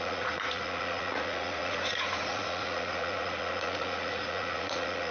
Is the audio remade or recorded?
remade